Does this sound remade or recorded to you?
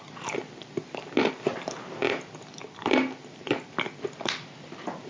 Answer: recorded